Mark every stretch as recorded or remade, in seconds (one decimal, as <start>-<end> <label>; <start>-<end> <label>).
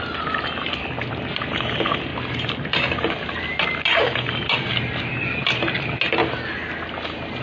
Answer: 0.0-7.4 recorded